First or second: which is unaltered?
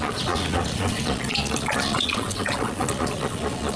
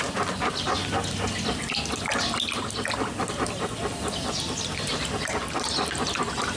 second